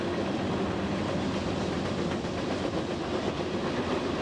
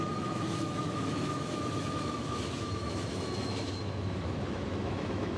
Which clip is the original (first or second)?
first